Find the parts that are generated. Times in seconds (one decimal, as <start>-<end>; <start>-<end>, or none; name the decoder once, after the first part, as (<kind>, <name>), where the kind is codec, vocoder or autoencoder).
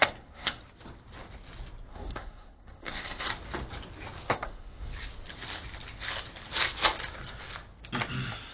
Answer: 0.0-0.6 (codec, SNAC); 1.9-3.3; 4.3-4.9